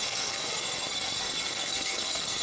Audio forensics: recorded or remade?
remade